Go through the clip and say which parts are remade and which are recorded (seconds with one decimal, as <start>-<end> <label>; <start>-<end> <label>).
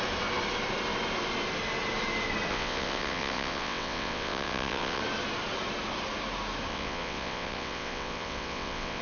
0.0-2.5 recorded; 2.5-5.0 remade; 5.0-6.7 recorded; 6.7-9.0 remade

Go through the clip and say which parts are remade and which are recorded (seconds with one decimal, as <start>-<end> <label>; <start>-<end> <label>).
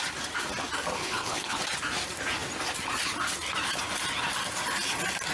0.0-1.0 recorded; 1.0-1.6 remade; 1.6-5.3 recorded